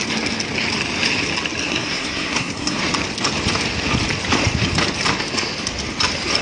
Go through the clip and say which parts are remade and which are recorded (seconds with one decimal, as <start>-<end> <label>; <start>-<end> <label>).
0.0-1.6 recorded; 1.6-2.8 remade; 2.8-6.4 recorded